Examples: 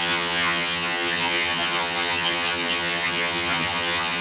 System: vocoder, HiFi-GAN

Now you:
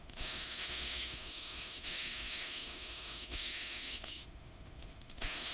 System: autoencoder, DAC-VAE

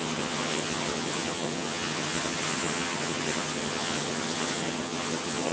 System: vocoder, HiFi-GAN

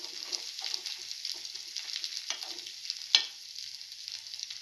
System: none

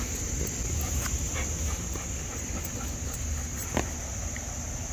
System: none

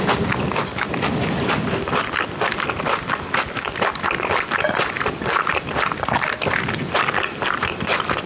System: none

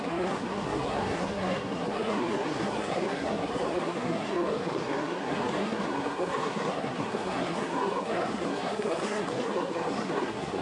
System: codec, SNAC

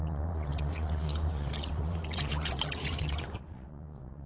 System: vocoder, WaveNeXt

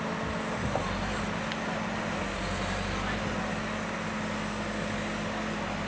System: none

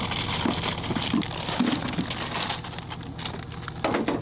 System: none